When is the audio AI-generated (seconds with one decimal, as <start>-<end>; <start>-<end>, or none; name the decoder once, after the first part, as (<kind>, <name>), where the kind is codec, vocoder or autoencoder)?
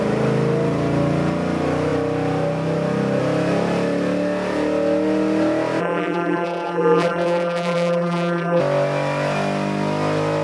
5.8-8.6 (vocoder, BigVGAN v2)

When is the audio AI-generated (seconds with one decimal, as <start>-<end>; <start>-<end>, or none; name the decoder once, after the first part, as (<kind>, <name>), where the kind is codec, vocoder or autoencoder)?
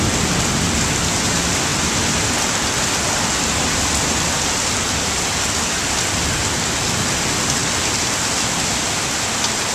none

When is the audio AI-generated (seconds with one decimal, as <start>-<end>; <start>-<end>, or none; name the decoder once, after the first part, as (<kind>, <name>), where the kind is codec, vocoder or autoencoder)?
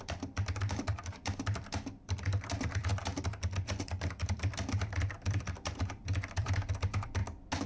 0.0-7.2 (vocoder, BigVGAN v2)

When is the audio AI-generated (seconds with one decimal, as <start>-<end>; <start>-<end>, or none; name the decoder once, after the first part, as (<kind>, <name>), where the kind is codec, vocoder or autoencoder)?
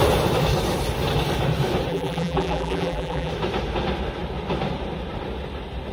1.9-3.3 (vocoder, BigVGAN v2)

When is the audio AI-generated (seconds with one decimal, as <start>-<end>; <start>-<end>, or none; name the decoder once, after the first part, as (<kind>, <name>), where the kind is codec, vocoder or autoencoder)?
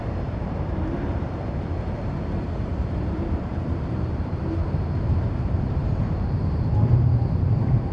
0.0-7.9 (vocoder, BigVGAN v2)